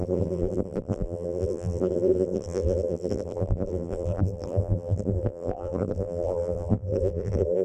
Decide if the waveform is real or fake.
fake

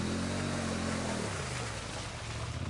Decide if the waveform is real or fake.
real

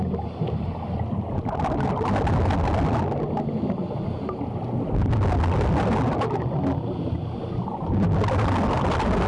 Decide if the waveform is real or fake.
real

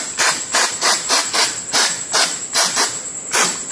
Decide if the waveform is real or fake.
fake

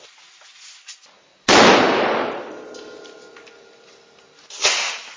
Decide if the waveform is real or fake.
real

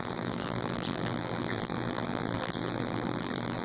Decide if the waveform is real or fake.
fake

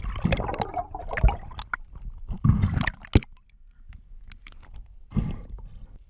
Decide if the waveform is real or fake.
real